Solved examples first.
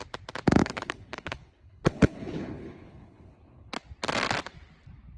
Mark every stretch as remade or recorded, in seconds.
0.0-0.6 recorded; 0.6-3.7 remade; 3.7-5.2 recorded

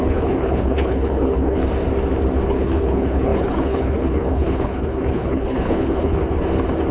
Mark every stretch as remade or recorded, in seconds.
0.0-1.6 remade; 1.6-2.5 recorded; 2.5-6.2 remade; 6.2-6.9 recorded